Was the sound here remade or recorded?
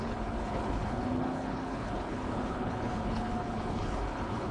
remade